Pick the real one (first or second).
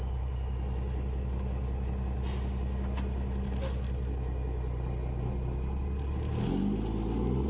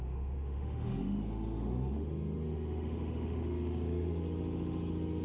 first